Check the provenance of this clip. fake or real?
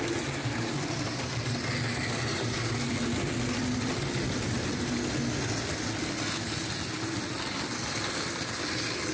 real